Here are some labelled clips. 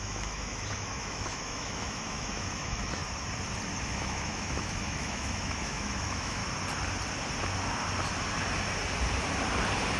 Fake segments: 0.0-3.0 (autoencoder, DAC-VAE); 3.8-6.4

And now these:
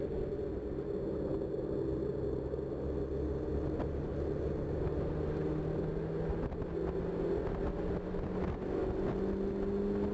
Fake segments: none

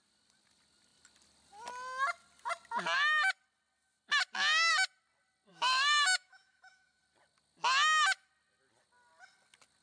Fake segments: 5.5-7.0 (autoencoder, DAC-VAE)

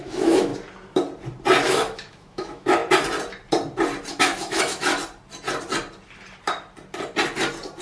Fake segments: 0.0-0.5 (autoencoder, DAC-VAE); 1.6-2.8; 4.1-4.9